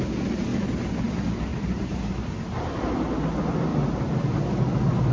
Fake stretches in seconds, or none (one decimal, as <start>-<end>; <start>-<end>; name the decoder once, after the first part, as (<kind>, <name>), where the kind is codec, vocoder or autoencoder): 1.5-3.0 (vocoder, BigVGAN v2); 3.7-4.6